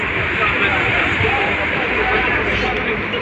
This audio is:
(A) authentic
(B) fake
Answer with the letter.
A